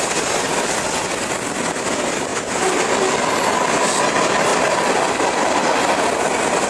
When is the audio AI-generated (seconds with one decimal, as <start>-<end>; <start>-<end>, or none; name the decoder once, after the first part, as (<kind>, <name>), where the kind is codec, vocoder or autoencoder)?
none